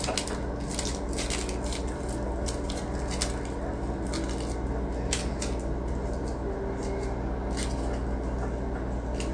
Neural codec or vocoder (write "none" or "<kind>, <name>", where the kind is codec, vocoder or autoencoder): none